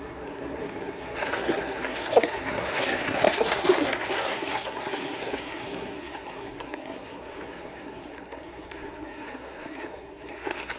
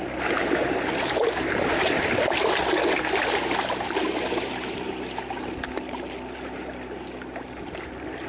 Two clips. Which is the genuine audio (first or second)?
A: second